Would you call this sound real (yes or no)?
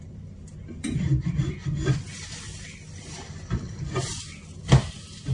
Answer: no